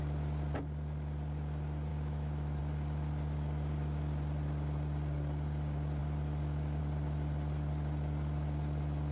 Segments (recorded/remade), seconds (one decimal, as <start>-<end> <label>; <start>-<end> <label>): 0.0-1.9 recorded; 1.9-2.6 remade; 2.6-9.1 recorded